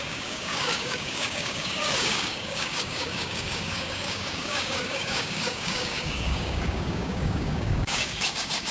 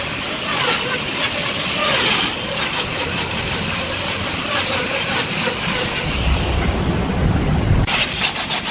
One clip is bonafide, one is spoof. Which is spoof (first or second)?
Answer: first